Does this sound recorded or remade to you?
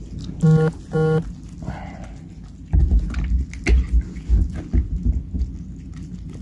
recorded